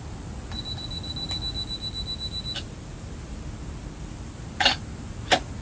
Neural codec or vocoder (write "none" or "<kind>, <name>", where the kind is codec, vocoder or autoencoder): none